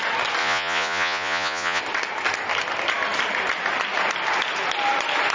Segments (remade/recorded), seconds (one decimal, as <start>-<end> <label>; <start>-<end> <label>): 0.0-0.4 recorded; 0.4-1.8 remade; 1.8-5.3 recorded